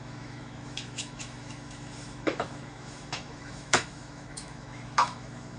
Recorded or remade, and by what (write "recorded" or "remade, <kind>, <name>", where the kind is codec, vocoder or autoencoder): remade, autoencoder, DAC-VAE